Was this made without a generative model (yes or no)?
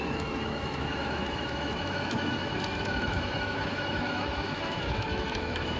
no